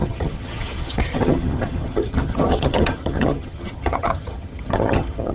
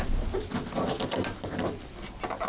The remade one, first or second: first